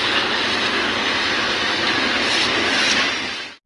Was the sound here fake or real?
real